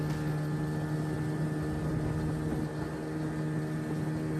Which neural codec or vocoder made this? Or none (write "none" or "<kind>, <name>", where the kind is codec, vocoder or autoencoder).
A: none